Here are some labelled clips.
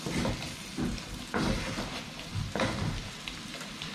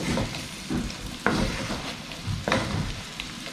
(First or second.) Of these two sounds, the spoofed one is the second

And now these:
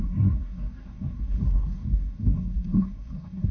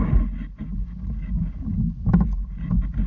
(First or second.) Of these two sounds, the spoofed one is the first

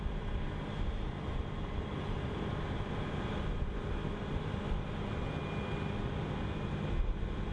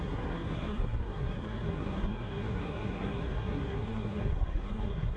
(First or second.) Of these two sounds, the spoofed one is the second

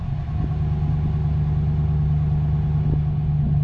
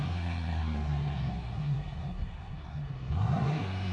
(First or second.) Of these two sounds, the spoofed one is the second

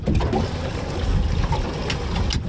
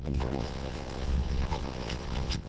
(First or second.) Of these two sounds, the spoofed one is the second